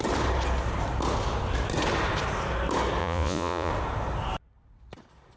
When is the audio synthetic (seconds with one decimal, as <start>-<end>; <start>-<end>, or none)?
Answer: 3.0-3.7